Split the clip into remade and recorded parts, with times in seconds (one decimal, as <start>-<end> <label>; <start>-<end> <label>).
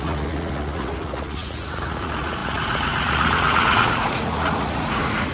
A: 0.0-5.3 remade